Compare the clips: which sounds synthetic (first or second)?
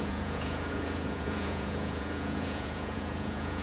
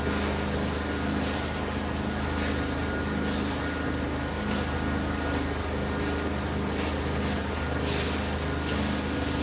first